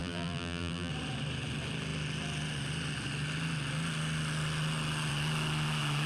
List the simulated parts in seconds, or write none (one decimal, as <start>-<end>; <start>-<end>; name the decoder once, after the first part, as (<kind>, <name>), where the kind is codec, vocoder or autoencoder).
0.0-0.9 (vocoder, BigVGAN v2)